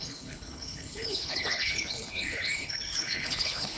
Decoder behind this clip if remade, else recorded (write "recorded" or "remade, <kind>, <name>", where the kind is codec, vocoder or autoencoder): remade, codec, HILCodec